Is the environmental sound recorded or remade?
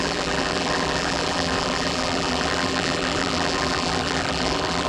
remade